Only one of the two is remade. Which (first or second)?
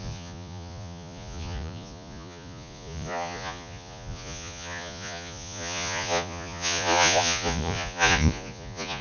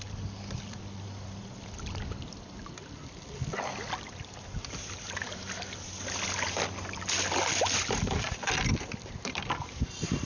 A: first